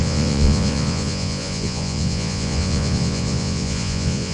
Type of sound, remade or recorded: remade